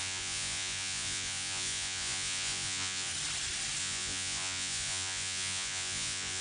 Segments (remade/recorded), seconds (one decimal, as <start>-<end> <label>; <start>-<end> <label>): 0.0-3.1 remade; 3.1-3.8 recorded; 3.8-6.4 remade